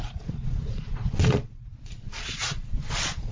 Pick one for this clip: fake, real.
fake